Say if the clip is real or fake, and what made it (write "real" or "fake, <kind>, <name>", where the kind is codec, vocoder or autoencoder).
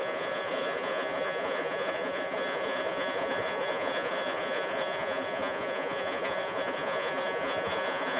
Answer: fake, vocoder, Vocos